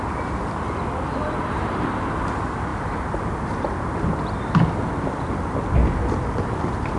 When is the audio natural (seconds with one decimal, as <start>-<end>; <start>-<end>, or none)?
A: 0.0-7.0